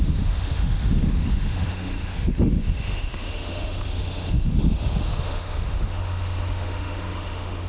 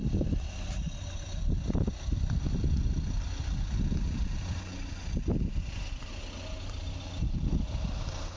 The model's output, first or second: first